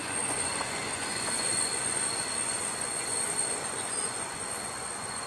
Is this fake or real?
fake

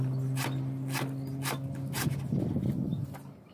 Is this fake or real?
real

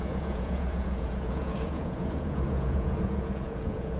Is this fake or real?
fake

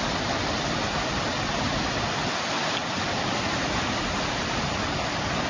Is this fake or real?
real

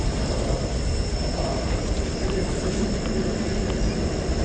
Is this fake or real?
real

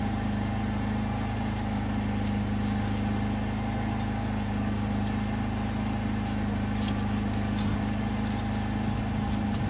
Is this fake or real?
real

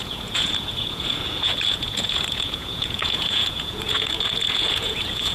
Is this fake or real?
fake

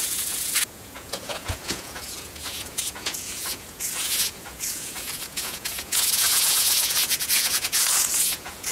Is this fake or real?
fake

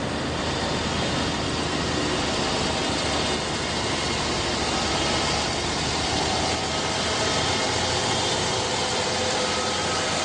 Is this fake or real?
real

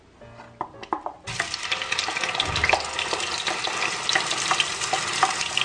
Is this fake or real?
real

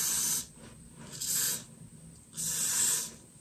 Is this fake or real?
real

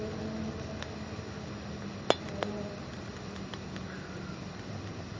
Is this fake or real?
real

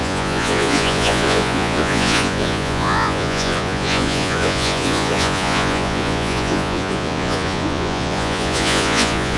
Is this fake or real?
fake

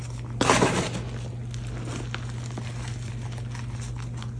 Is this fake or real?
real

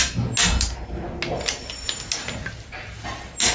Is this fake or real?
real